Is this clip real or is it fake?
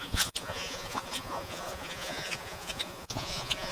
fake